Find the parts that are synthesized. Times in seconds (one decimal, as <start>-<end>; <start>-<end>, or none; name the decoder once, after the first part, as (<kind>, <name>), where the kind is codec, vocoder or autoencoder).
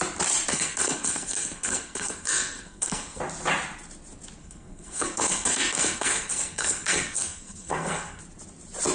0.5-3.2 (codec, SNAC); 4.4-8.2